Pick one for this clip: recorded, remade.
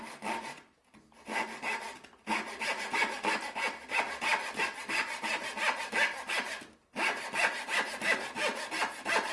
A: recorded